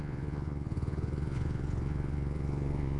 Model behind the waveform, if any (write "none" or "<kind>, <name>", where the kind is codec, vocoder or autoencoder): vocoder, Vocos